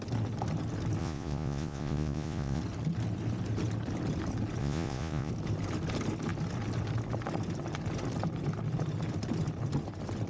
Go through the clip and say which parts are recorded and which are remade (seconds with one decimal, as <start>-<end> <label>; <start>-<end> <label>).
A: 0.0-1.0 recorded; 1.0-2.6 remade; 2.6-4.6 recorded; 4.6-5.3 remade; 5.3-10.3 recorded